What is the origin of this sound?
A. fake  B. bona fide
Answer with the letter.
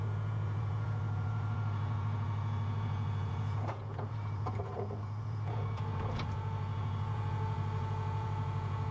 A